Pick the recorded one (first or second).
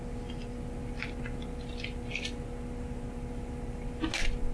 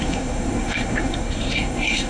first